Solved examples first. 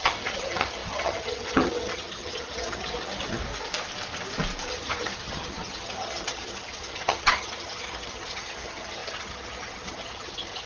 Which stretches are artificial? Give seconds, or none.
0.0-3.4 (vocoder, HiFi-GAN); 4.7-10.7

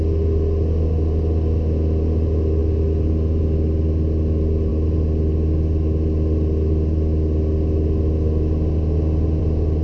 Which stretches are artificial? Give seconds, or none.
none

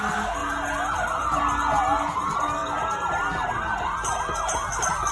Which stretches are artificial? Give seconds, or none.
none